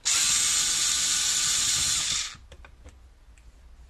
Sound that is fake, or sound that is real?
real